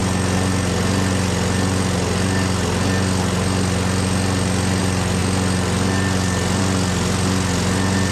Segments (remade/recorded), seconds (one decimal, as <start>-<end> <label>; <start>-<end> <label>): 0.0-8.1 recorded